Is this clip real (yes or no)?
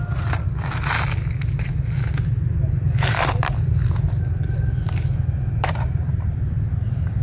yes